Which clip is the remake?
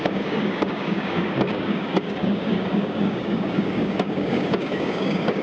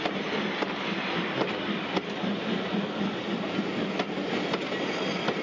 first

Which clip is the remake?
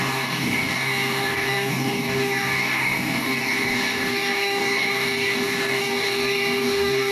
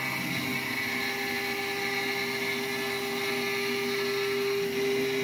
first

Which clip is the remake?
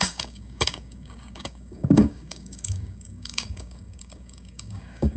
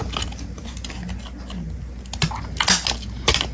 first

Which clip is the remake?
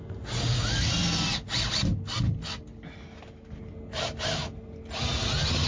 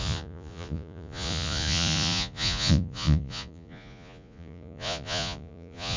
second